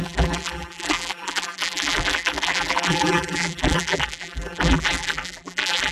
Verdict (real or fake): fake